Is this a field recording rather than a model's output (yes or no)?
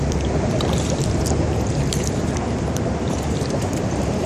no